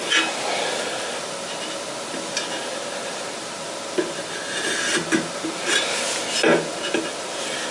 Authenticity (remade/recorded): recorded